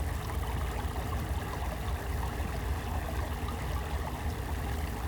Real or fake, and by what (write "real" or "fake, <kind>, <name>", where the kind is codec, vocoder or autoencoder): real